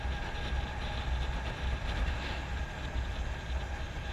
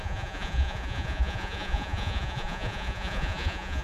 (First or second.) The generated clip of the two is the second